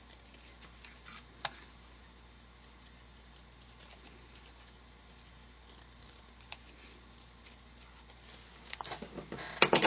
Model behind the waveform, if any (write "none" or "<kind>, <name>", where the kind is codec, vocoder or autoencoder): none